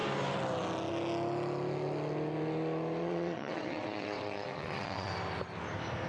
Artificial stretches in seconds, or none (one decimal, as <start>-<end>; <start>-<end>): 3.0-5.1

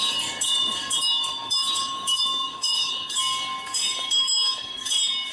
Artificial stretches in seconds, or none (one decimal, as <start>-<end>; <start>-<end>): 0.0-5.3